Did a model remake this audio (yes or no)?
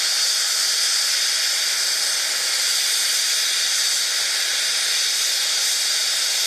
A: no